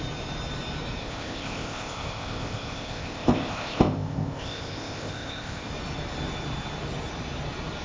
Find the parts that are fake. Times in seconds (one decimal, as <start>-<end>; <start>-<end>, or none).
1.0-5.7